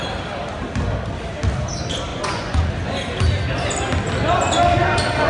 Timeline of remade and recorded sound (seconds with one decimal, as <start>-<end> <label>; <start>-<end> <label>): 0.0-2.1 recorded; 2.1-2.7 remade; 2.7-5.3 recorded